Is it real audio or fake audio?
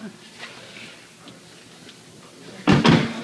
real